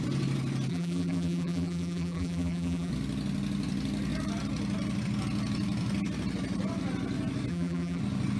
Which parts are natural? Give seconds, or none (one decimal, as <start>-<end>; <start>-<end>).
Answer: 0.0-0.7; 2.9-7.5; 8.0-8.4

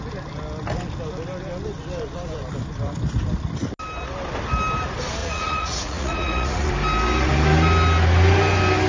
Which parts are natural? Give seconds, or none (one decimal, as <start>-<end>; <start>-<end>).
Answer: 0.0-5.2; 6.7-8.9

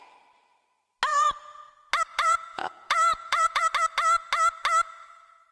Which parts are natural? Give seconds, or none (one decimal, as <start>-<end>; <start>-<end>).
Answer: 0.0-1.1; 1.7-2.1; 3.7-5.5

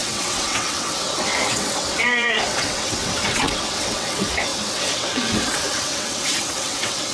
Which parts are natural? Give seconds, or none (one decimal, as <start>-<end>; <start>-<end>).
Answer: none